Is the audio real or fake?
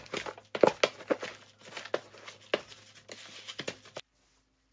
real